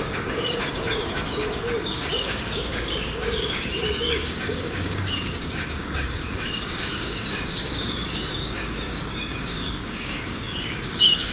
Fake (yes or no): yes